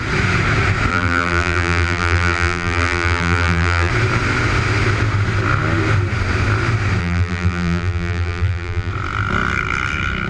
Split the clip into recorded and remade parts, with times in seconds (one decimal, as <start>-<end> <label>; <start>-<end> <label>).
0.0-0.9 recorded; 0.9-3.9 remade; 3.9-7.0 recorded; 7.0-8.9 remade; 8.9-10.3 recorded